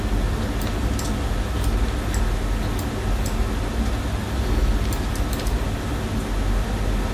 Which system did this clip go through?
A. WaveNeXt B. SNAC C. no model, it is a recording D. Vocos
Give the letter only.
C